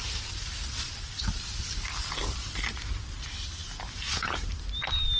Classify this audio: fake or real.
real